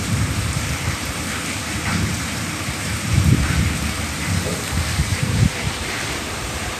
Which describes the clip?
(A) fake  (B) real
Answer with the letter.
A